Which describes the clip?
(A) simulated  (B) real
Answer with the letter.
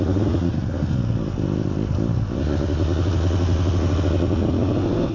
B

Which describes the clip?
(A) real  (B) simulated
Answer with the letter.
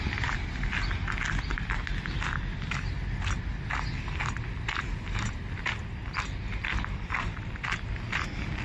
A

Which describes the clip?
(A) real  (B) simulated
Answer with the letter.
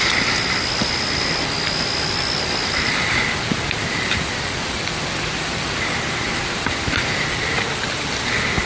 A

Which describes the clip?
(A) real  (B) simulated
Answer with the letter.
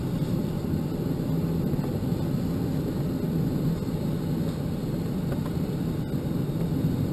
A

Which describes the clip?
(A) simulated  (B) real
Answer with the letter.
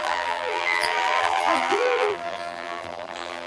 A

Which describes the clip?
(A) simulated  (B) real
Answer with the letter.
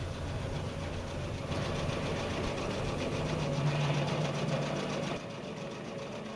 A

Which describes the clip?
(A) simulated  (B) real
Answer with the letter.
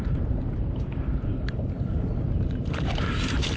A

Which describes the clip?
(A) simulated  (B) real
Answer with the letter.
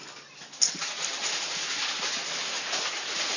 B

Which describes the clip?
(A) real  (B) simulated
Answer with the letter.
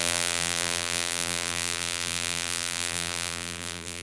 B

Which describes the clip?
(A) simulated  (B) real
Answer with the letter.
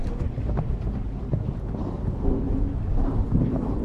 A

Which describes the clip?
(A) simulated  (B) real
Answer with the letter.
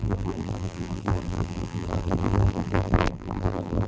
A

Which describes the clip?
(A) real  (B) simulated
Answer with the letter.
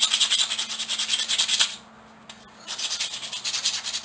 A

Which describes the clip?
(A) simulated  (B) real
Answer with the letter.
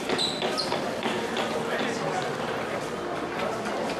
B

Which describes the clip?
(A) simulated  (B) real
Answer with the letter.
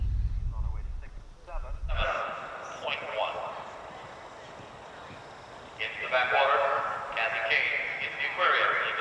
B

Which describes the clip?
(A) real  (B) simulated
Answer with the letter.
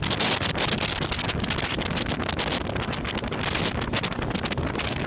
A